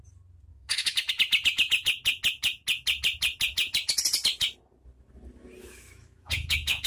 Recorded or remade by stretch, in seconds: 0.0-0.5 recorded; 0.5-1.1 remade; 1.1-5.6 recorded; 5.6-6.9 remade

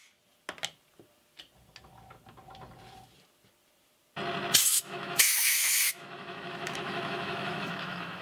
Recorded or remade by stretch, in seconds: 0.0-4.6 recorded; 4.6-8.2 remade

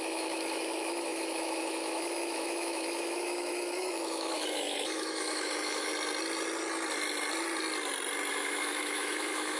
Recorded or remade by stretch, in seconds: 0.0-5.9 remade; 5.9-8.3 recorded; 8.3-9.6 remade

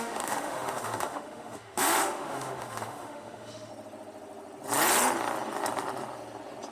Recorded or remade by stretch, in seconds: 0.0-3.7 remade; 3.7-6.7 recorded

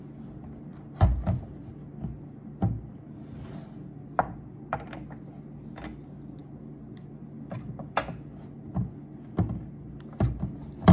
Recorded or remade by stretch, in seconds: 0.0-10.9 recorded

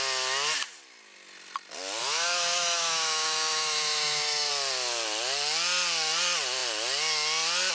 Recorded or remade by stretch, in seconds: 0.0-2.0 recorded; 2.0-4.5 remade; 4.5-7.7 recorded

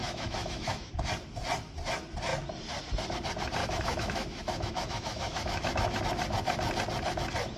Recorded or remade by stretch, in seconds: 0.0-0.9 remade; 0.9-3.6 recorded; 3.6-6.0 remade; 6.0-7.6 recorded

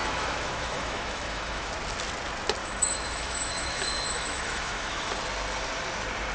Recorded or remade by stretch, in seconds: 0.0-1.7 remade; 1.7-2.6 recorded; 2.6-5.1 remade; 5.1-6.3 recorded